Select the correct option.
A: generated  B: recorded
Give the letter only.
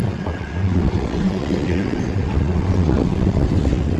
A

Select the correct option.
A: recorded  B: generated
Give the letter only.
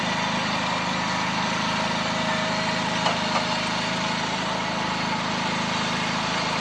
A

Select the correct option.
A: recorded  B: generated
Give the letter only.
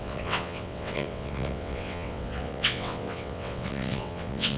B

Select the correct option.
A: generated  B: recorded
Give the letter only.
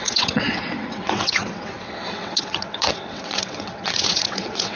A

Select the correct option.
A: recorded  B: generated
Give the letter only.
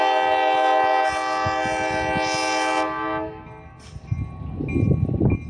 A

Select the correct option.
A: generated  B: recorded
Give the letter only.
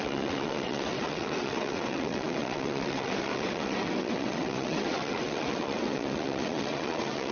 A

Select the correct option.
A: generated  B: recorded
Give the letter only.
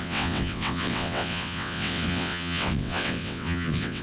A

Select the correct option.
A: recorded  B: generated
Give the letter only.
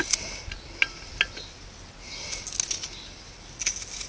A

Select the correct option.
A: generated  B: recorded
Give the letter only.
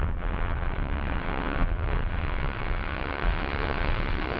A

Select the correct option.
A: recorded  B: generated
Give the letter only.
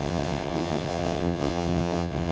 B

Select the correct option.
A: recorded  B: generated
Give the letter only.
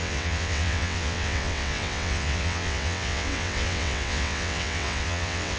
B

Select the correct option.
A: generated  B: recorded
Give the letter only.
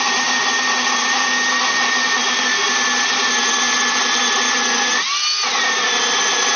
B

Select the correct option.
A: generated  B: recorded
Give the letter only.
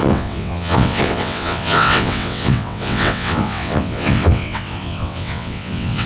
A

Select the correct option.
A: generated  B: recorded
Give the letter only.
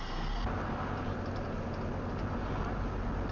B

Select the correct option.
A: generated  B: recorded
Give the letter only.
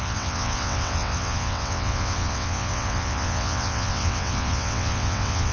A